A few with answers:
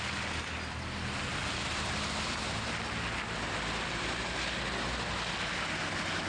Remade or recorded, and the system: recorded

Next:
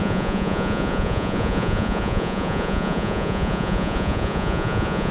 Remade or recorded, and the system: remade, vocoder, Vocos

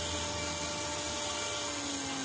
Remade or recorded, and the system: recorded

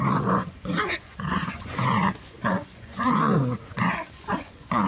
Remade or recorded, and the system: remade, vocoder, Vocos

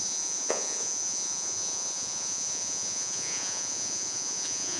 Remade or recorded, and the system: remade, vocoder, Vocos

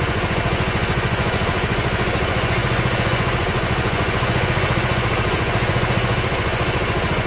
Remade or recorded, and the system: remade, vocoder, Vocos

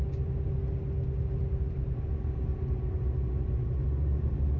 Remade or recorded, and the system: recorded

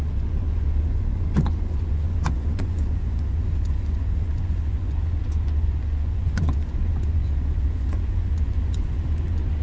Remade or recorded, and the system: remade, vocoder, Vocos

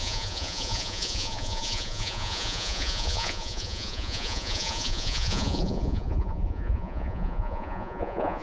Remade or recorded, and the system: remade, vocoder, Vocos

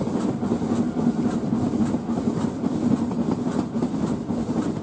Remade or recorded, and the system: recorded